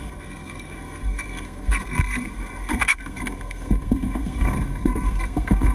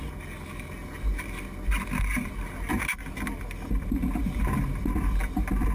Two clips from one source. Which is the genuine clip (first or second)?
second